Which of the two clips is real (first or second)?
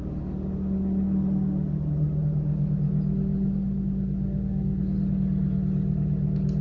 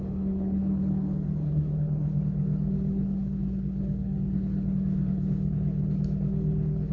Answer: first